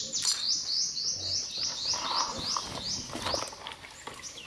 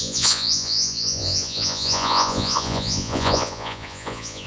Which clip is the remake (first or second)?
second